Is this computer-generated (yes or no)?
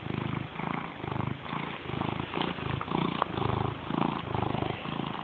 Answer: no